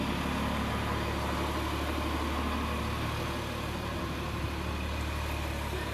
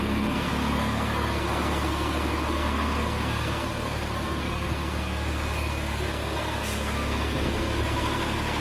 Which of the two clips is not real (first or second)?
second